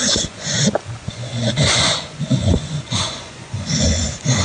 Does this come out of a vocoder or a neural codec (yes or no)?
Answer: yes